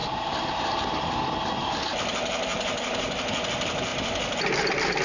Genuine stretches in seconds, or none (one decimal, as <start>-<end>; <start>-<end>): 0.7-2.5; 3.4-5.0